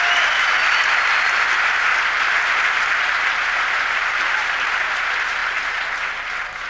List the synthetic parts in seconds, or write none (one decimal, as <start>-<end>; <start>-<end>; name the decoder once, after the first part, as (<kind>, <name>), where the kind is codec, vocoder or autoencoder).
none